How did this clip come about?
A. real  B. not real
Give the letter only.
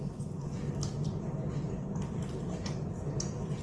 A